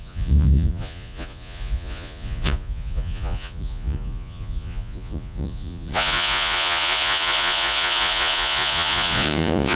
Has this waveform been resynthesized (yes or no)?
yes